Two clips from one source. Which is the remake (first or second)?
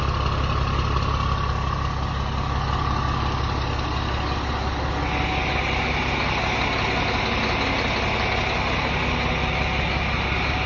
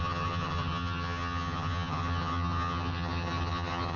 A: second